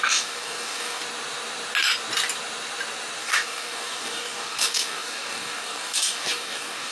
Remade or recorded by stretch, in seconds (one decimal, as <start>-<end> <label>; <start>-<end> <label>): 0.0-1.0 remade; 1.0-3.2 recorded; 3.2-6.9 remade